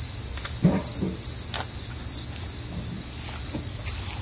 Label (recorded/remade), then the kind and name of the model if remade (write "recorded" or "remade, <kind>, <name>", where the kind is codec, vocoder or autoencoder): recorded